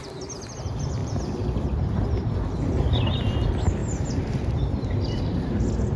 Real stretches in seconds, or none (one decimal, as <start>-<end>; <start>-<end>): 0.0-1.0; 3.2-3.8

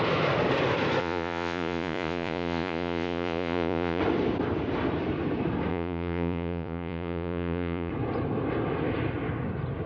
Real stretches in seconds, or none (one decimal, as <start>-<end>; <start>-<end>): 0.0-1.0; 4.0-5.7; 7.9-9.9

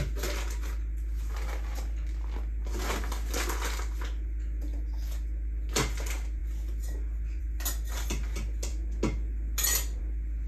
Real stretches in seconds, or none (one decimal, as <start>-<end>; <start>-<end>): 0.0-10.5

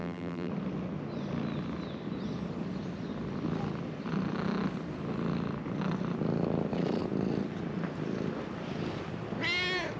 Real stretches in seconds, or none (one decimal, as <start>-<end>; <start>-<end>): 0.5-10.0